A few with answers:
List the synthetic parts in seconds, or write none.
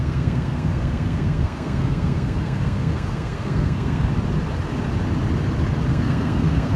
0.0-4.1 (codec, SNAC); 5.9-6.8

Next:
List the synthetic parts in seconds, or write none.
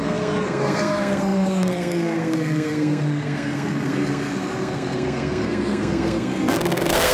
0.0-7.1 (codec, SNAC)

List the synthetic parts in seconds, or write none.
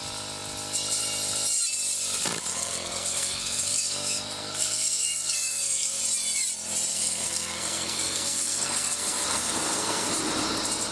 2.5-6.0 (codec, SNAC); 6.9-10.1